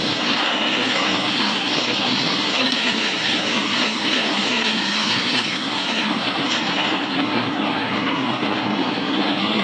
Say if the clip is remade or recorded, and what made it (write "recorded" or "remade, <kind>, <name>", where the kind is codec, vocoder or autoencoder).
remade, codec, SNAC